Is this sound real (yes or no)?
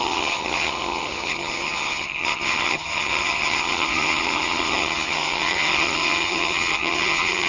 no